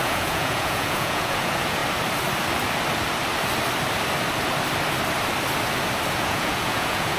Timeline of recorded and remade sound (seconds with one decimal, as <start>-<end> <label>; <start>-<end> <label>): 0.0-1.8 remade; 1.8-6.1 recorded; 6.1-7.2 remade